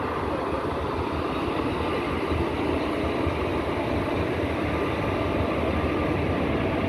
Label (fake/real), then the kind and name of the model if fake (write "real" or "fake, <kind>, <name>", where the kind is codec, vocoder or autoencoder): real